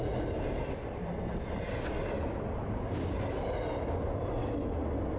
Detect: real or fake real